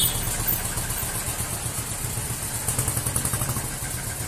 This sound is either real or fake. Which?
real